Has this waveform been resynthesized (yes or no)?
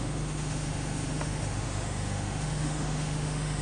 yes